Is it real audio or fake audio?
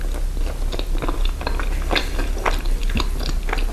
real